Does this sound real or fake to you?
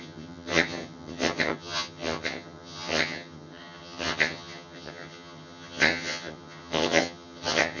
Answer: fake